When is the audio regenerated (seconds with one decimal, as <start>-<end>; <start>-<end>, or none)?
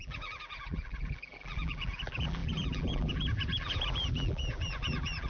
0.0-5.3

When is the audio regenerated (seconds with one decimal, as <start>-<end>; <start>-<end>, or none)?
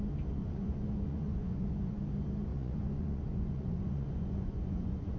0.4-2.0; 2.5-5.2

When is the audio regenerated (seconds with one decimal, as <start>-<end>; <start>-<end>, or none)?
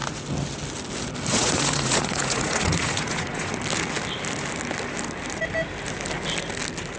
1.3-3.5